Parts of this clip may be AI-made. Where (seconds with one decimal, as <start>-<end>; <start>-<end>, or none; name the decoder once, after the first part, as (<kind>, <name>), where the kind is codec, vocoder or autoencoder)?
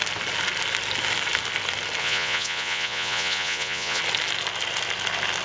2.0-4.0 (vocoder, Vocos)